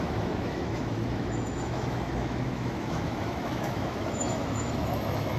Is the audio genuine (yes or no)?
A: no